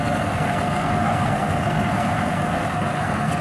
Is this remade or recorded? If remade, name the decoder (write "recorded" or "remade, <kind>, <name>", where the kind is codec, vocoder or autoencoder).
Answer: remade, codec, SNAC